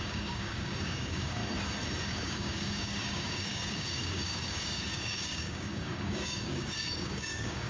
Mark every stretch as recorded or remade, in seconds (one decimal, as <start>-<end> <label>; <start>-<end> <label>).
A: 0.0-1.4 remade; 1.4-2.0 recorded; 2.0-7.7 remade